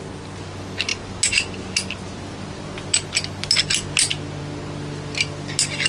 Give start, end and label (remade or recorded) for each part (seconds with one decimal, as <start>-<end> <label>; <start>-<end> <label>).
0.0-5.9 recorded